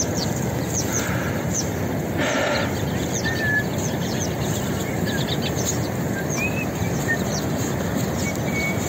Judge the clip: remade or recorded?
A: recorded